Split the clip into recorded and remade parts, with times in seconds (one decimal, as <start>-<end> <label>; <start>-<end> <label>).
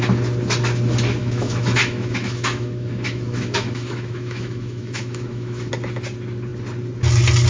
0.0-1.2 recorded; 1.2-5.7 remade; 5.7-7.5 recorded